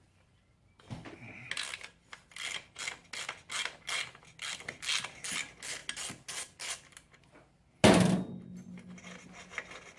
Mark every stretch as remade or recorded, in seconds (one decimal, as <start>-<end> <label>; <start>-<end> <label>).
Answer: 0.0-10.0 recorded